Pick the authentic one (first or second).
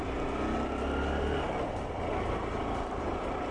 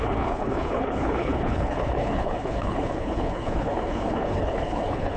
first